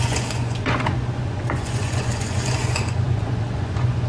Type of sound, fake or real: fake